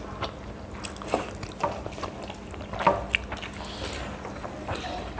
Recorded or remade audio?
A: recorded